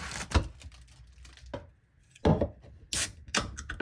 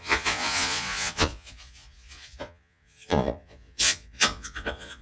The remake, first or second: second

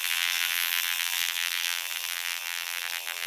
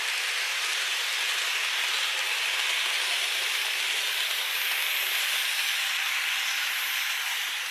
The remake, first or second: first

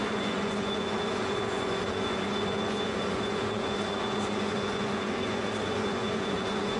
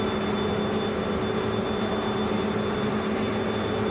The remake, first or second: first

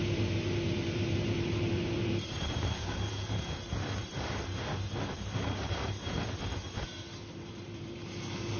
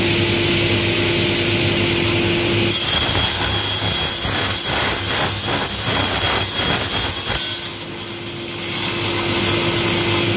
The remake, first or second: first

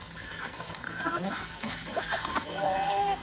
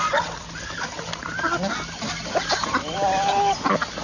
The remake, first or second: first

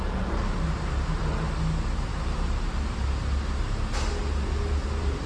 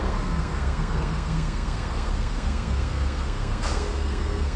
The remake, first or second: second